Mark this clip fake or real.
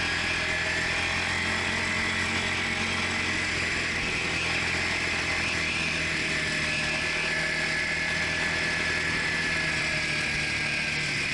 real